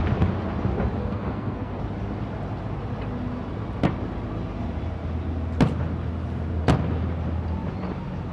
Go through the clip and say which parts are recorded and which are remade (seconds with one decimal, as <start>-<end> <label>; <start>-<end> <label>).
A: 0.0-1.0 recorded; 1.0-1.8 remade; 1.8-8.3 recorded